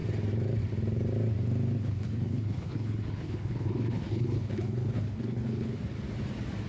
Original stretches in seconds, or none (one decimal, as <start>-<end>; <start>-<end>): 0.0-1.8; 5.8-6.7